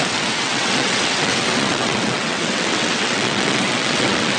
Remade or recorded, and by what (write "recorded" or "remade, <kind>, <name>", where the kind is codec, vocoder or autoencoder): remade, vocoder, WaveNeXt